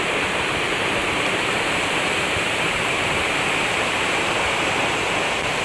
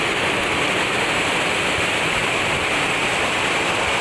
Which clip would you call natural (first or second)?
second